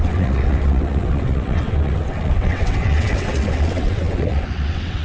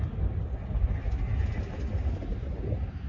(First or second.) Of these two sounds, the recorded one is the second